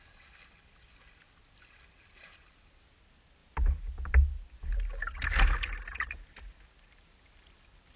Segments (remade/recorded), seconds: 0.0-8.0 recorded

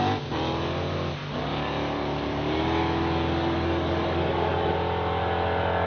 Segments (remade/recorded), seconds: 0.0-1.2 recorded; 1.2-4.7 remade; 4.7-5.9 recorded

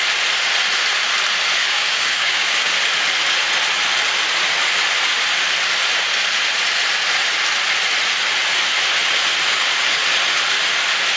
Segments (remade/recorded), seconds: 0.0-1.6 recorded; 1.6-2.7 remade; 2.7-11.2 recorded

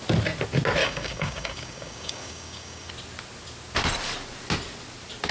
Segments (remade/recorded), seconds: 0.0-0.8 recorded; 0.8-2.9 remade; 2.9-5.3 recorded

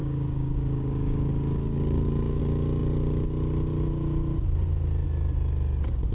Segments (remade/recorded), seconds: 0.0-2.4 remade; 2.4-6.1 recorded